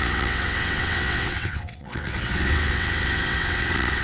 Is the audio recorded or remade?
remade